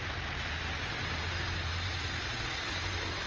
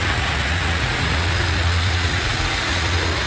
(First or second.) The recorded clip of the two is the first